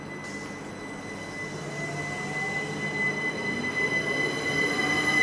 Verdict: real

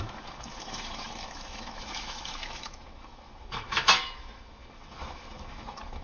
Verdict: fake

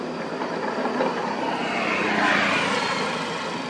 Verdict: real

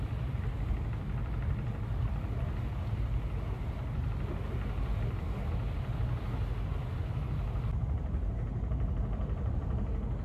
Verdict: real